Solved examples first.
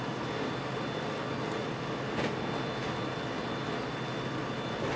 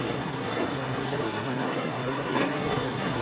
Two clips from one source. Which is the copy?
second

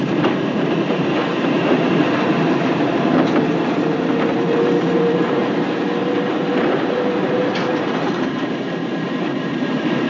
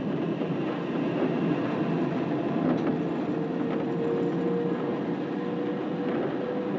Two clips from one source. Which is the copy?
first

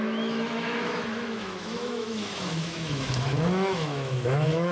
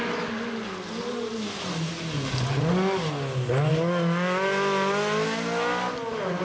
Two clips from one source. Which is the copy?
first